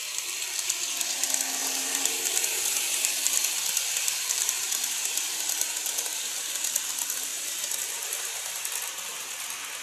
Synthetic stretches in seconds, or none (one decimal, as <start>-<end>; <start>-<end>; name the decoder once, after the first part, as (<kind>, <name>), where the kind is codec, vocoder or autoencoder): 1.6-2.8 (vocoder, BigVGAN v2); 4.0-6.0; 7.3-8.6